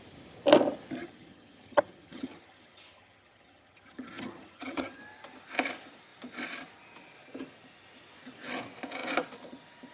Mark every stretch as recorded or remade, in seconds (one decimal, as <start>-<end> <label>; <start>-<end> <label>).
0.0-1.0 recorded; 1.0-5.0 remade; 5.0-9.9 recorded